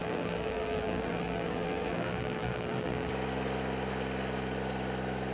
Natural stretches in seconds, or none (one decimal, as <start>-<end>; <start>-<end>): 3.1-5.3